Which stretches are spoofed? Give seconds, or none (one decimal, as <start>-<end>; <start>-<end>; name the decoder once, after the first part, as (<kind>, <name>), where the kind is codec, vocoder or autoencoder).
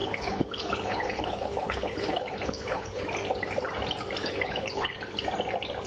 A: 0.0-3.0 (codec, HILCodec); 4.2-4.9